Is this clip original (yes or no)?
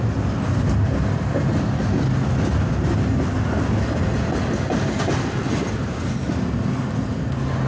yes